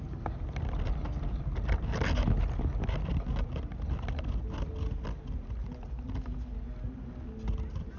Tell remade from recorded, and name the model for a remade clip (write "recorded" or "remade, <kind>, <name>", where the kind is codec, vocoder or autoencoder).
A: recorded